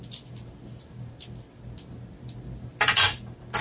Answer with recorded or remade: recorded